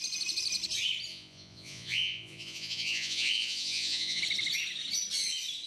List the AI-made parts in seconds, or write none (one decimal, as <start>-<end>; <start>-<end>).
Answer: 1.1-4.2

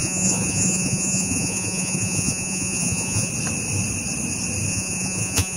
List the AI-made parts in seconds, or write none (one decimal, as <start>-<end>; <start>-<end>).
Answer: 0.0-3.3; 4.7-5.6

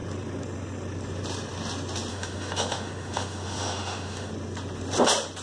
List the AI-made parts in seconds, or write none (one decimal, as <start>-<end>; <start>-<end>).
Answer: 2.1-4.3

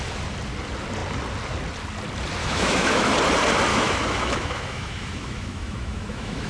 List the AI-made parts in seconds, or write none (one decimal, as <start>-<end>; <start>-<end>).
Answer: 2.4-3.1; 3.7-6.5

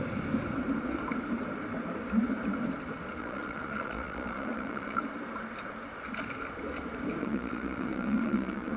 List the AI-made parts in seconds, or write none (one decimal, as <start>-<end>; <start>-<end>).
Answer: 3.2-5.0; 7.2-8.8

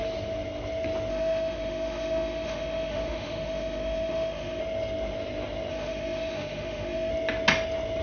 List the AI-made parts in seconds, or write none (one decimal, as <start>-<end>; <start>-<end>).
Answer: 1.1-4.6; 5.7-7.1

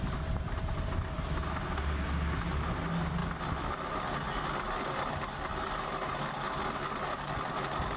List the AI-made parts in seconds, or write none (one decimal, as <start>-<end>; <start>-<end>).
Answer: none